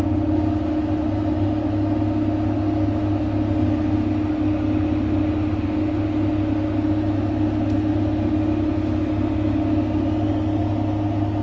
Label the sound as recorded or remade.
recorded